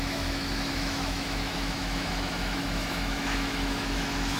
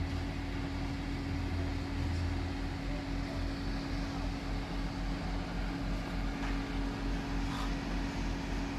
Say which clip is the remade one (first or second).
first